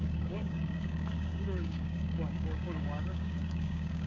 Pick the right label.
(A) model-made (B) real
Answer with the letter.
A